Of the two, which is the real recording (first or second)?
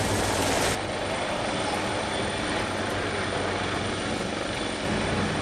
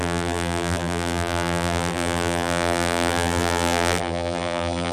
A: first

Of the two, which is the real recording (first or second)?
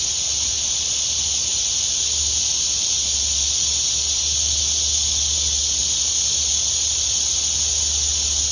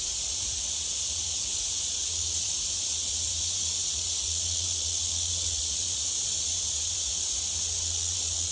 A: first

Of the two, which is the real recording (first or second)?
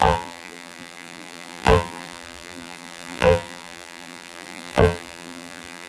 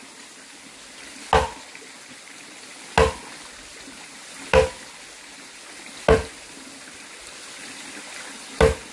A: second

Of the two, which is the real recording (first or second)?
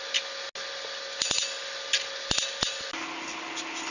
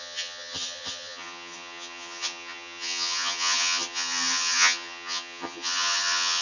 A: first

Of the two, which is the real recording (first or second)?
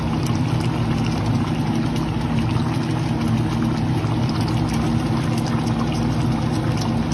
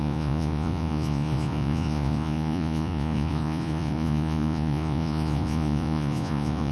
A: first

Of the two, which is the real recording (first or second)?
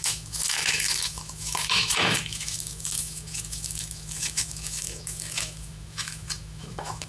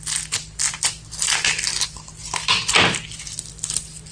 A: second